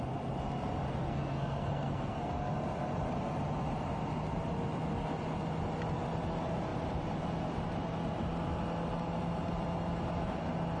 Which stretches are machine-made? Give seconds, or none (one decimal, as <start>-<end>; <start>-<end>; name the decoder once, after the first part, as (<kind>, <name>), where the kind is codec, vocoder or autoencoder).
0.9-2.3 (codec, SNAC)